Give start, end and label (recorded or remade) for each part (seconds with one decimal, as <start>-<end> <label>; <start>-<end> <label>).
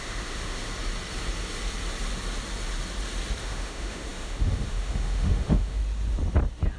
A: 0.0-0.7 remade; 0.7-3.4 recorded; 3.4-5.8 remade; 5.8-6.8 recorded